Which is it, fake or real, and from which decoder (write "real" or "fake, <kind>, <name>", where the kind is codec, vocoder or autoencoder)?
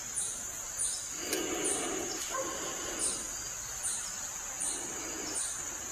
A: real